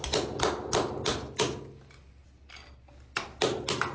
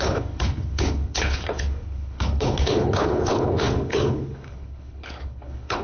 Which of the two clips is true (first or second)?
first